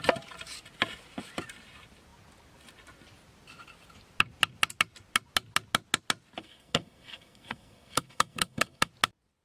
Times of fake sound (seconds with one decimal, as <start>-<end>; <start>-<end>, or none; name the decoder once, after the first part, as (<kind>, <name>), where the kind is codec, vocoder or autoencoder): 6.4-8.9 (codec, SNAC)